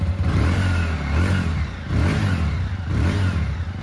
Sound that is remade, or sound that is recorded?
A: recorded